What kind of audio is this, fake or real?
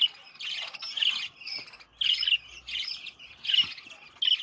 real